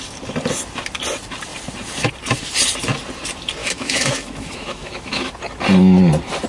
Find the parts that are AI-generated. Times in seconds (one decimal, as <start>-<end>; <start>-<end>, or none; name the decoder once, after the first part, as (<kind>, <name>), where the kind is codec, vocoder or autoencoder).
3.6-5.3 (autoencoder, DAC-VAE)